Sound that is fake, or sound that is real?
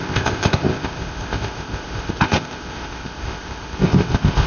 fake